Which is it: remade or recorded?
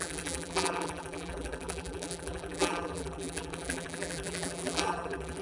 remade